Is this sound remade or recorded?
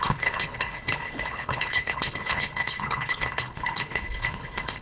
remade